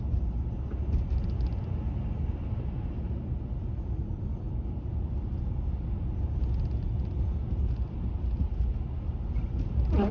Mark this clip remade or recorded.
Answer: recorded